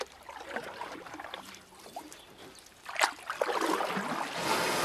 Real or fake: real